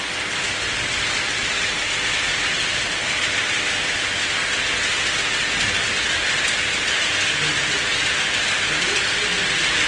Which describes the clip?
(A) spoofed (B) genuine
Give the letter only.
B